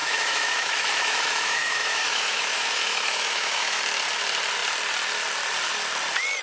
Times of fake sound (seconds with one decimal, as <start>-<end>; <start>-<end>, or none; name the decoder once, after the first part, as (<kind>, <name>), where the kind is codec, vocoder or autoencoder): 0.0-3.8 (autoencoder, DAC-VAE)